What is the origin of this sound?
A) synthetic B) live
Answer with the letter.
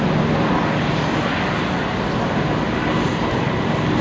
B